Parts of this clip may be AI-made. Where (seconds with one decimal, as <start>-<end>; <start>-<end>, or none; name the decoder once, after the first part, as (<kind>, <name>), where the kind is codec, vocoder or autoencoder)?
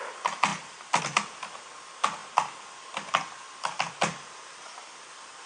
none